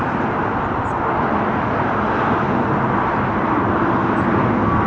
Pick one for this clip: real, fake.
real